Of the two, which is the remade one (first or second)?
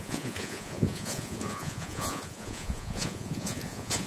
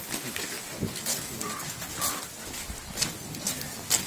first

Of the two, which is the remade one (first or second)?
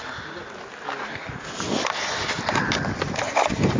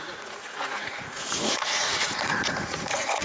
second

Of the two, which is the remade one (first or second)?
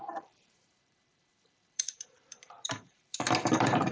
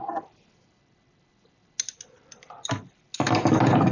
first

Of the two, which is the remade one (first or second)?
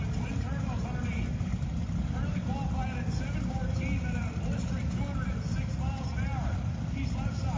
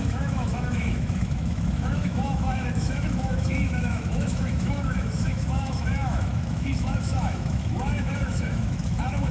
second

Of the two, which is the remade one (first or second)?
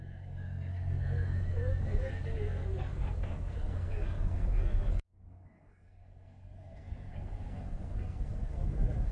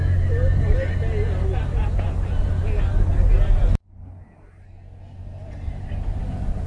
first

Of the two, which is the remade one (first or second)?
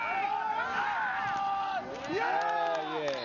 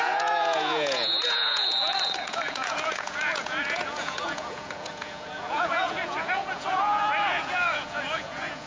second